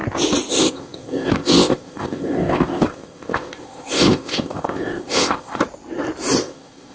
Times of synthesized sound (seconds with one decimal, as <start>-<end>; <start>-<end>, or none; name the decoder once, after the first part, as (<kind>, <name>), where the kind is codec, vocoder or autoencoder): 0.5-5.6 (codec, ZipCodec); 6.4-6.9